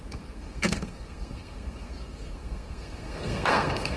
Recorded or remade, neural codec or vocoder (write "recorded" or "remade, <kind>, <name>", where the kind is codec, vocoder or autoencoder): remade, codec, SNAC